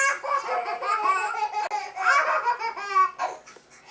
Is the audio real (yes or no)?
yes